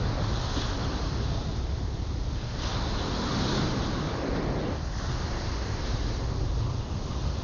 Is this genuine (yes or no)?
yes